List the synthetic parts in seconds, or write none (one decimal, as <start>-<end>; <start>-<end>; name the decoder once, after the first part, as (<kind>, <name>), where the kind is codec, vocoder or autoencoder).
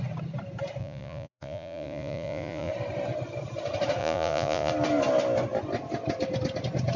0.8-2.7 (vocoder, Vocos); 4.0-4.7